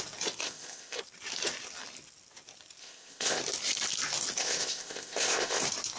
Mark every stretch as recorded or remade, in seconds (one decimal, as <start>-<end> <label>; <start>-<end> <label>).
0.0-0.4 recorded; 0.4-1.0 remade; 1.0-2.8 recorded; 2.8-3.4 remade; 3.4-4.4 recorded; 4.4-5.6 remade; 5.6-6.0 recorded